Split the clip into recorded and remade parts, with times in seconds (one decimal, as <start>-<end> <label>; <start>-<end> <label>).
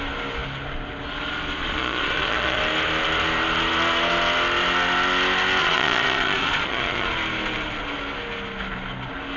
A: 0.0-1.6 recorded; 1.6-2.6 remade; 2.6-5.6 recorded; 5.6-7.1 remade; 7.1-9.4 recorded